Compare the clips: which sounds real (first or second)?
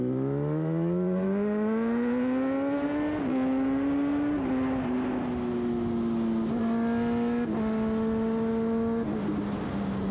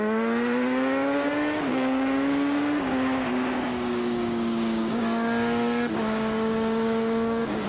first